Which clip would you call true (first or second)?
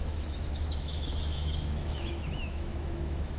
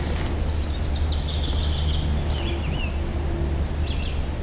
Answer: second